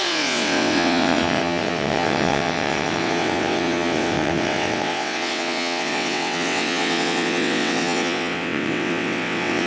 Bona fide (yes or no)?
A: no